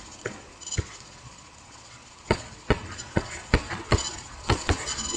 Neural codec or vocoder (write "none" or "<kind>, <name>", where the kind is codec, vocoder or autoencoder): vocoder, Vocos